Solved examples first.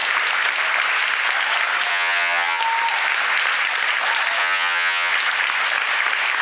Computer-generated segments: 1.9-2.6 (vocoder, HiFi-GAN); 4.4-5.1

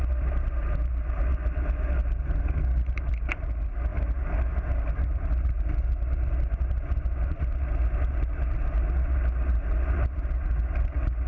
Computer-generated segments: none

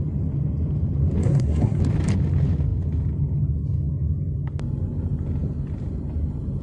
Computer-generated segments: 1.2-1.8 (codec, SNAC)

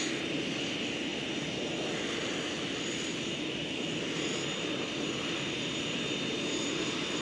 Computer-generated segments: none

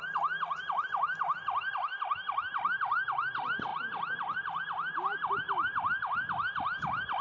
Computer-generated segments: none

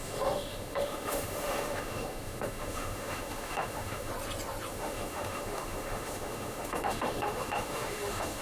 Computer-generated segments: 0.0-4.1 (autoencoder, DAC-VAE); 4.7-8.4